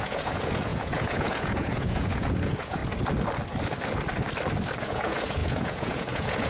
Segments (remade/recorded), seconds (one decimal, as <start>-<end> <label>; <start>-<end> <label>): 0.0-2.8 remade; 2.8-4.8 recorded; 4.8-6.5 remade